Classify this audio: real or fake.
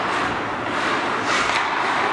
real